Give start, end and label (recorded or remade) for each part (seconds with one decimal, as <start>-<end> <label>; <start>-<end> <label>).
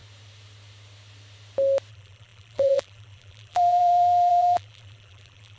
0.0-1.9 recorded; 1.9-5.6 remade